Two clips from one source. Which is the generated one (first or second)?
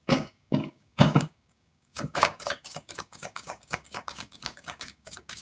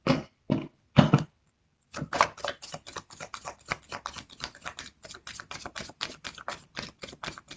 first